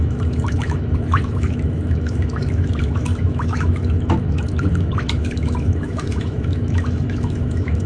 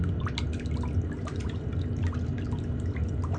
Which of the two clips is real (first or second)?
second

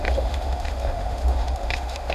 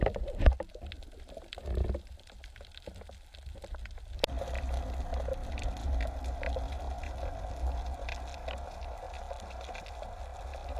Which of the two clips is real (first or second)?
second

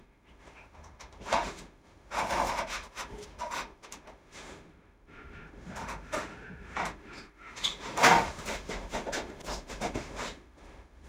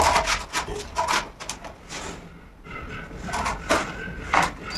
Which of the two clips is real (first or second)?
second